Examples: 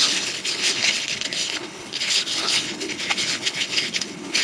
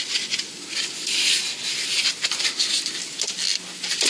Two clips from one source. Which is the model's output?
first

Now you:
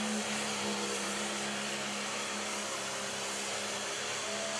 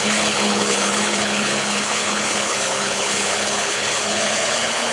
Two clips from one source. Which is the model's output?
second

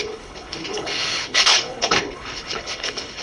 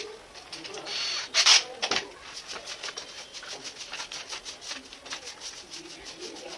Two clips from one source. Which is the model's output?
first